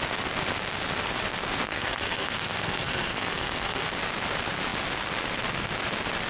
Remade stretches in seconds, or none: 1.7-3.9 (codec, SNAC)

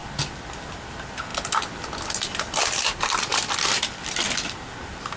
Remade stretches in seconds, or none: none

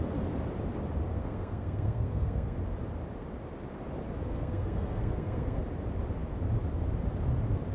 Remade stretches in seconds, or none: 1.1-2.6 (codec, SNAC); 4.2-5.6

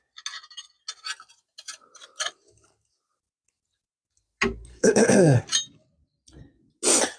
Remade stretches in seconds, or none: 4.7-5.4 (codec, SNAC)